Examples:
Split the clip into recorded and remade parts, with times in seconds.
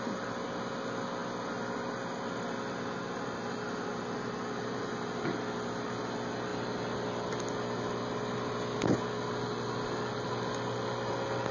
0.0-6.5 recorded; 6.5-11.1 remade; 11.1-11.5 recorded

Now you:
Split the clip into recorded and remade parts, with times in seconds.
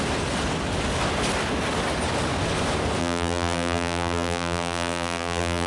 0.0-3.0 recorded; 3.0-5.7 remade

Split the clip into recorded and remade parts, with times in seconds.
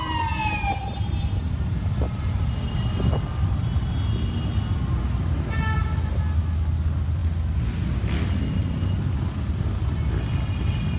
0.0-0.4 recorded; 0.4-1.8 remade; 1.8-11.0 recorded